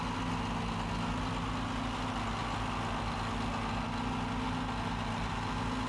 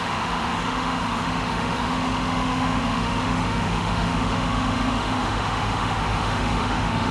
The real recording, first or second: first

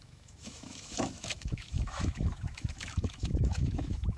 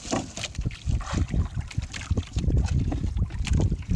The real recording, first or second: second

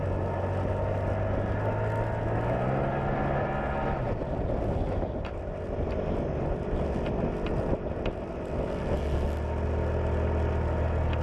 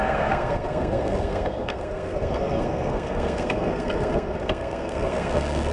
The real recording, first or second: first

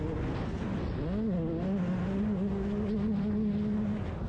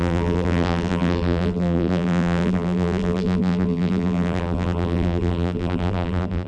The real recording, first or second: first